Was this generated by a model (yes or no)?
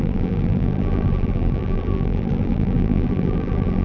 yes